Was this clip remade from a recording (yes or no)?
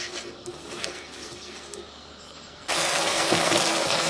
yes